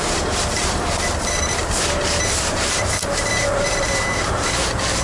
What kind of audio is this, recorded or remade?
remade